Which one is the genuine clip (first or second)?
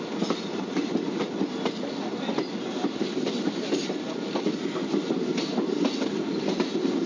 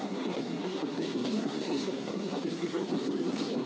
first